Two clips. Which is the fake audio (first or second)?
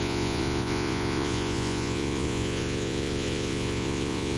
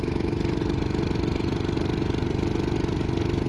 first